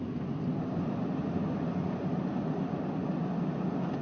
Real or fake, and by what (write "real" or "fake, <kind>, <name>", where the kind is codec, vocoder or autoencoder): real